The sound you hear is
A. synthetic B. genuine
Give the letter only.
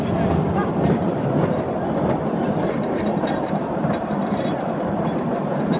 A